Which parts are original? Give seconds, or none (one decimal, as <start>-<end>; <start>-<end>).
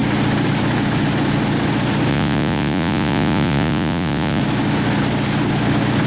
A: 0.0-2.1; 4.4-6.1